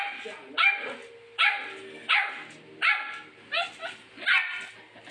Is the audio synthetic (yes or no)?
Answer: no